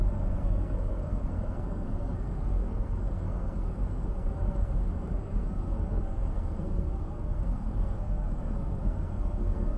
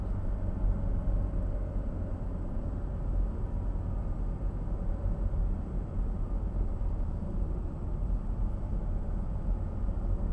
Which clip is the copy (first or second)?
first